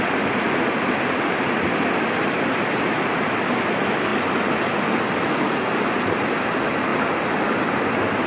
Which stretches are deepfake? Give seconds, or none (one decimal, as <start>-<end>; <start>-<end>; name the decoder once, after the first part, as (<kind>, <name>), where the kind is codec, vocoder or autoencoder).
none